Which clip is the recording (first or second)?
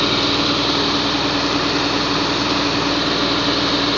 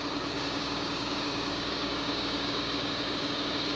first